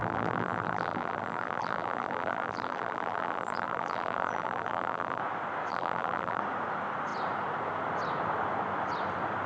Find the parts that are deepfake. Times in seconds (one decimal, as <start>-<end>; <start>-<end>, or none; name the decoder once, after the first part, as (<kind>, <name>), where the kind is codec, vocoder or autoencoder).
0.0-5.2 (vocoder, BigVGAN v2); 5.7-6.4